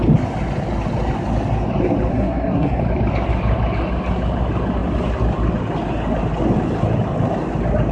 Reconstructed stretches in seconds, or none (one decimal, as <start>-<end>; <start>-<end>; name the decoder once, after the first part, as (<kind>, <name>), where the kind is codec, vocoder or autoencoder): 2.1-2.8 (codec, SNAC)